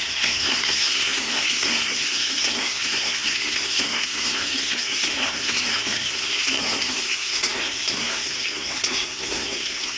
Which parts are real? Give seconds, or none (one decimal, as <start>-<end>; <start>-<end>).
none